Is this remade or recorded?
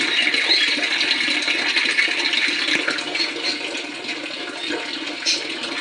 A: recorded